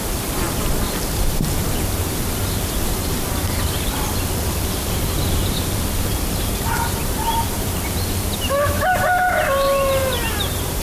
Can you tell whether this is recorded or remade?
remade